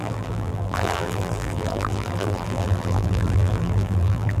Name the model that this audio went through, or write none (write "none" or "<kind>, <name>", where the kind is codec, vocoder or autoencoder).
vocoder, BigVGAN v2